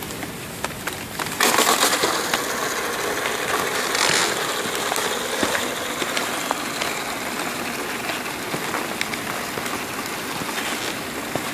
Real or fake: real